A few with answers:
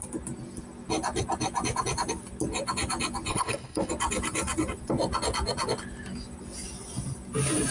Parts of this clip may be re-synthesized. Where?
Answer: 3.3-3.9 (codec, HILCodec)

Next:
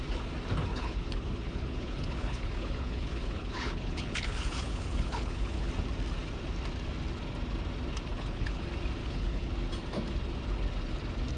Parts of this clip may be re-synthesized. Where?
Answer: 0.7-5.7 (codec, HILCodec); 8.1-8.6; 9.0-9.5

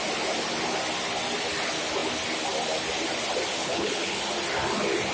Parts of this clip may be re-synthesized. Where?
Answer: 3.6-4.2 (codec, HILCodec)

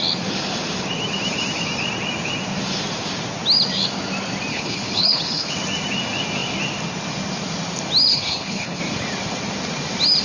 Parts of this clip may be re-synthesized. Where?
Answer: 4.5-5.5 (codec, HILCodec); 8.1-8.8

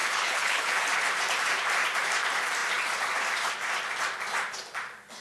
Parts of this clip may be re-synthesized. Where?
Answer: 0.0-0.8 (codec, HILCodec)

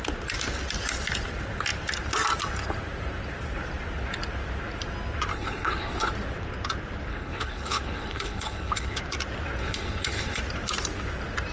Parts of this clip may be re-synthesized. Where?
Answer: 5.3-6.1 (codec, HILCodec); 7.1-9.0; 9.6-10.4

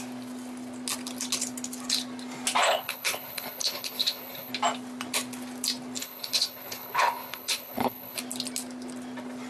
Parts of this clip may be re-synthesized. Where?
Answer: 2.6-4.5 (codec, HILCodec); 6.0-8.2

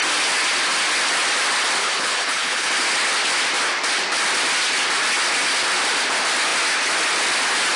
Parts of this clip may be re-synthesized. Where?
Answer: 1.8-2.7 (codec, HILCodec)